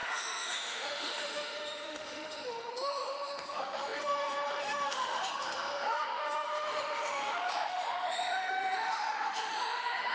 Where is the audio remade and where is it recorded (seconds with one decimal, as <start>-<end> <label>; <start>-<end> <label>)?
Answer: 0.0-10.1 remade